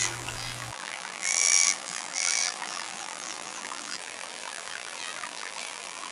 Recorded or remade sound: remade